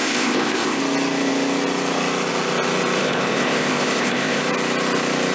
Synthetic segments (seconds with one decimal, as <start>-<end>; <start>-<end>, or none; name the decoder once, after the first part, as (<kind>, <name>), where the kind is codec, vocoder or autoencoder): 0.0-0.8 (codec, ZipCodec); 3.0-4.4